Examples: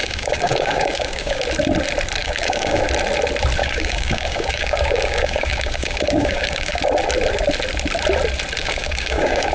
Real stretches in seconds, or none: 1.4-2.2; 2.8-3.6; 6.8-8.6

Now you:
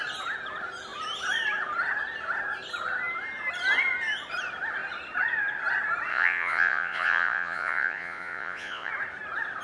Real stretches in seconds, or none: 0.0-6.1; 8.9-9.6

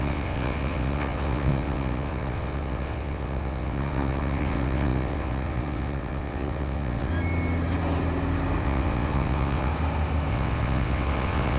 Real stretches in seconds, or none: 7.1-8.6; 9.7-10.3